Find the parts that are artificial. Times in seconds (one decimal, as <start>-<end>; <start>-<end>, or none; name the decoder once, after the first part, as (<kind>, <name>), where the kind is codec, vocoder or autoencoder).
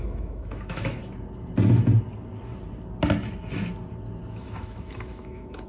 0.0-1.0 (autoencoder, DAC-VAE); 4.3-5.7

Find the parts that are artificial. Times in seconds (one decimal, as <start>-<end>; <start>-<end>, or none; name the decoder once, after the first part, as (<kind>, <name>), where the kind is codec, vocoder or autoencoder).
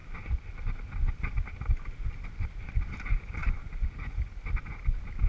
none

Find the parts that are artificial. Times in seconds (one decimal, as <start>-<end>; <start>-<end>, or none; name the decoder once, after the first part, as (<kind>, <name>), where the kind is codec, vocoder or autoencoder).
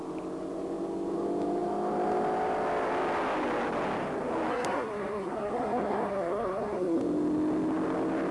4.5-7.0 (codec, SNAC)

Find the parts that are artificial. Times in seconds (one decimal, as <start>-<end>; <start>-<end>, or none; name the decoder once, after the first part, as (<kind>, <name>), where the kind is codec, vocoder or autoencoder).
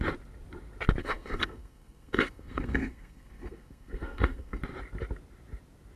1.0-4.6 (codec, SNAC)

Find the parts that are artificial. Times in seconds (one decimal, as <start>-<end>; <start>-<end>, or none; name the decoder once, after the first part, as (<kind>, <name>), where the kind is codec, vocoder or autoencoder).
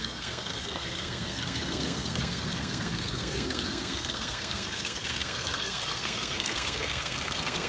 0.0-7.7 (codec, SNAC)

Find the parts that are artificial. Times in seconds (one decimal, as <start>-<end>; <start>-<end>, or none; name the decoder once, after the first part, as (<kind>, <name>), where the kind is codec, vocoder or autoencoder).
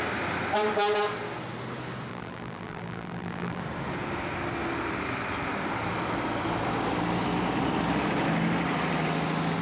2.1-3.6 (vocoder, BigVGAN v2)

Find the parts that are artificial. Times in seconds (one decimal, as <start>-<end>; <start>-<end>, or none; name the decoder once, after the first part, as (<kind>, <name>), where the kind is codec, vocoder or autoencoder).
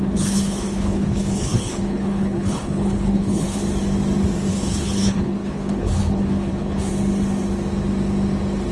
0.0-3.6 (codec, HILCodec); 4.5-6.9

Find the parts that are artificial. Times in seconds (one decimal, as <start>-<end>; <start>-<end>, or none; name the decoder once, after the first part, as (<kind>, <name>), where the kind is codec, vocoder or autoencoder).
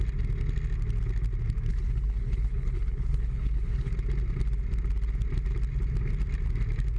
1.7-3.9 (codec, HILCodec)